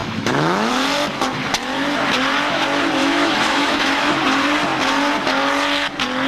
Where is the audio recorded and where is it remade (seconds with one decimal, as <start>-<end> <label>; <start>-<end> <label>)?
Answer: 0.0-0.7 remade; 0.7-3.0 recorded; 3.0-4.1 remade; 4.1-6.3 recorded